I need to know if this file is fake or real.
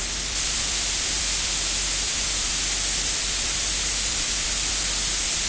fake